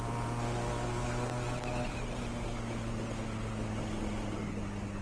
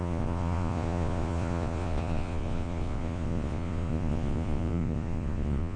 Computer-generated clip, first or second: second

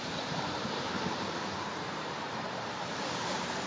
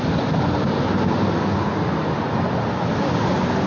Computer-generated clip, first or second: first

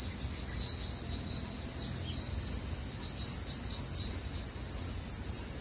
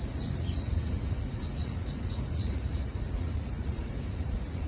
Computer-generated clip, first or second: second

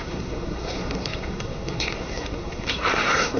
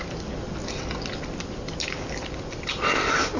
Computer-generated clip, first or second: first